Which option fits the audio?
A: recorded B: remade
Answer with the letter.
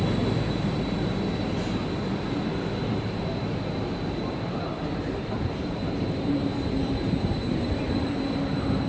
B